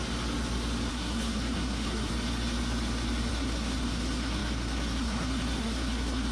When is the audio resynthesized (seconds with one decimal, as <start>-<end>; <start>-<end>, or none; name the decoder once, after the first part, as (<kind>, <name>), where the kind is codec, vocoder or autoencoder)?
0.9-2.1 (codec, SNAC); 3.3-6.3